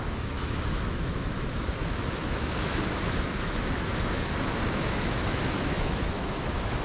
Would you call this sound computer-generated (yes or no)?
yes